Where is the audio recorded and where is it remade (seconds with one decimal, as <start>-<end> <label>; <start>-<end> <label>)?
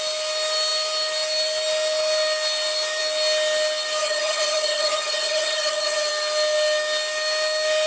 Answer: 0.0-4.0 recorded; 4.0-6.1 remade; 6.1-7.9 recorded